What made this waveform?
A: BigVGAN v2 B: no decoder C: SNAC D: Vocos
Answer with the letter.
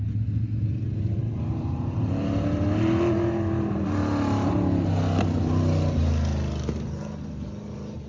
B